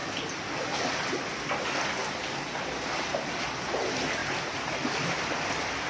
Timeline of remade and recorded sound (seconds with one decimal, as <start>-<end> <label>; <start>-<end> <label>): 0.0-5.9 recorded